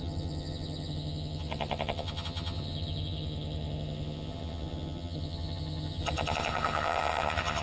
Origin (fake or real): fake